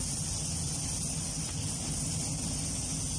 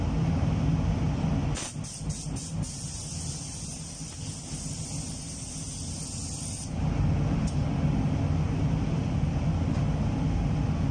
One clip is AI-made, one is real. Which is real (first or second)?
second